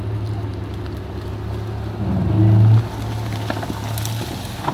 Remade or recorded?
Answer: recorded